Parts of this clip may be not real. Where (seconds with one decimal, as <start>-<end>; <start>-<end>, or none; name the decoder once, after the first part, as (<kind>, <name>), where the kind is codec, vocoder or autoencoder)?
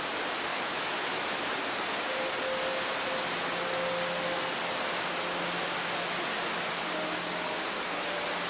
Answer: 0.5-1.3 (autoencoder, DAC-VAE)